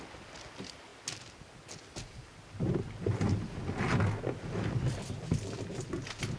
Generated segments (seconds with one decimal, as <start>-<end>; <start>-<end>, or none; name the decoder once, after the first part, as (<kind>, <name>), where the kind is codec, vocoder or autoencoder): none